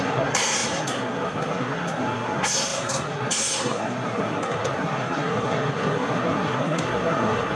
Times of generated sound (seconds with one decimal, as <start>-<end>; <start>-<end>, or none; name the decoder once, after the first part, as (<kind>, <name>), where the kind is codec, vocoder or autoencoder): 0.0-7.6 (codec, SNAC)